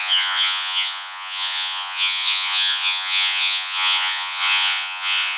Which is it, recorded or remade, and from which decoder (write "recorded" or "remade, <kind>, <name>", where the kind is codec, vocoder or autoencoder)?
remade, vocoder, Vocos